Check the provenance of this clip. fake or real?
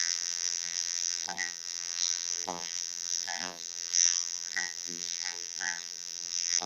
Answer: fake